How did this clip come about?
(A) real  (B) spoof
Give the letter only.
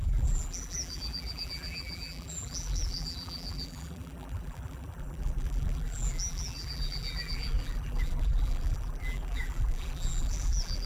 B